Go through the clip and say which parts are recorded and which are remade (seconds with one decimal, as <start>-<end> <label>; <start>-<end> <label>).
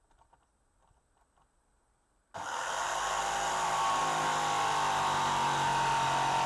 0.0-6.5 recorded